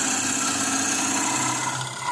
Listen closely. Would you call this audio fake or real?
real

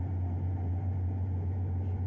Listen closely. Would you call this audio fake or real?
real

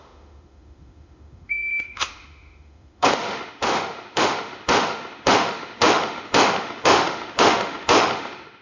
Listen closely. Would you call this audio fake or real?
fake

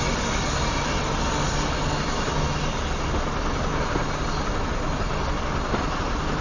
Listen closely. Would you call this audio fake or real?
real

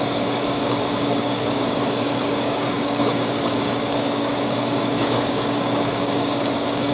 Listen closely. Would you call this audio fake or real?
fake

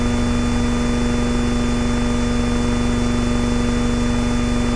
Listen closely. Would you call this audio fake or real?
real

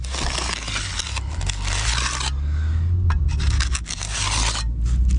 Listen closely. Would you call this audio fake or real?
real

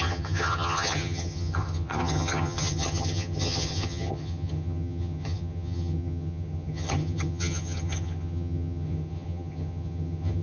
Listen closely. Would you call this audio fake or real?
fake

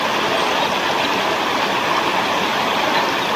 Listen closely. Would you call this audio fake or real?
real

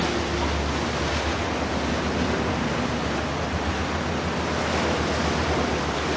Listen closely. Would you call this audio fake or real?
real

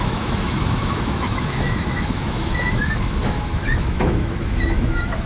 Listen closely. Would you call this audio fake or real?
fake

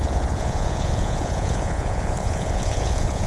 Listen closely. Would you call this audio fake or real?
fake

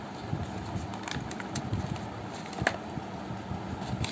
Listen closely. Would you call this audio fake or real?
real